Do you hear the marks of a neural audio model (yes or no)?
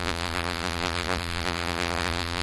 yes